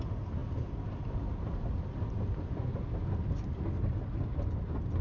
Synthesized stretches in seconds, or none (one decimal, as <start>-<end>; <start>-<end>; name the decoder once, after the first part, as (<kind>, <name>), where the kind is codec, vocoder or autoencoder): none